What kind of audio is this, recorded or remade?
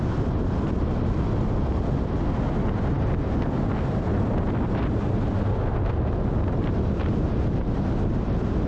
recorded